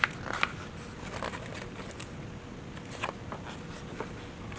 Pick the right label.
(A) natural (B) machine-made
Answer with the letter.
A